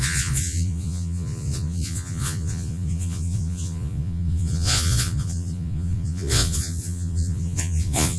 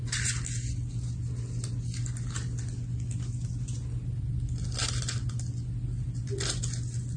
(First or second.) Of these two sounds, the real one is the second